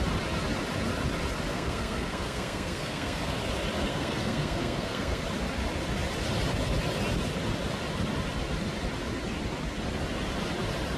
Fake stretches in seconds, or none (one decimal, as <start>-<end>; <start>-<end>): 1.5-3.4; 3.9-5.2

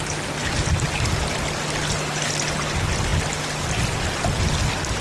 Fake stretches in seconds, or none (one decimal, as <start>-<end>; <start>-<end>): none